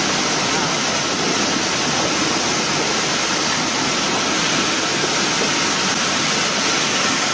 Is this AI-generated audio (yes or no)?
no